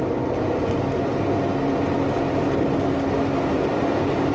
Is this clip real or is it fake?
real